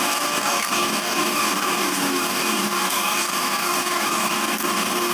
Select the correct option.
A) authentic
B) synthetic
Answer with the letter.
B